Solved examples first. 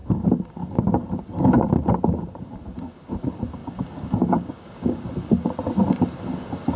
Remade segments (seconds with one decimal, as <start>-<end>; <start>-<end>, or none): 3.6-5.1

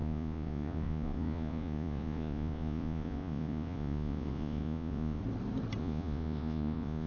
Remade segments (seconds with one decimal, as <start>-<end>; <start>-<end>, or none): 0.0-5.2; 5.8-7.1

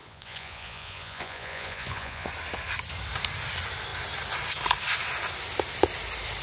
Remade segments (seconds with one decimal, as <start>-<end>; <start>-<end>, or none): 0.0-2.3